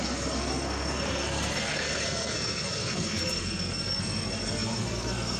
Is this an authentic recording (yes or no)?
no